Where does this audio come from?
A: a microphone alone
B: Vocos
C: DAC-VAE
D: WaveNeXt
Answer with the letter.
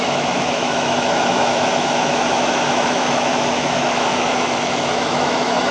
C